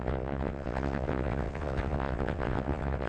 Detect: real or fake fake